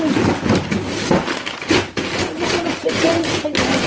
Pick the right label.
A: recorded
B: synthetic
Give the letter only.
A